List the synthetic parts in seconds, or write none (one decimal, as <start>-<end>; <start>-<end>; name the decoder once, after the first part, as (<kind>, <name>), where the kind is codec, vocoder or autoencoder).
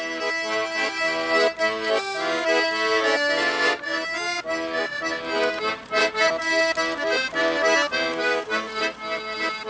none